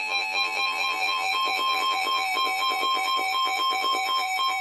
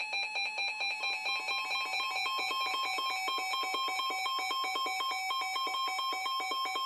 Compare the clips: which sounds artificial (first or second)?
first